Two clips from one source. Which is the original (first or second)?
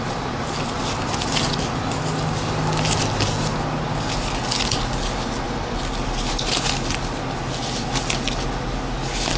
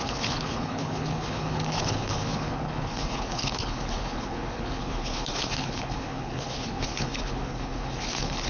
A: first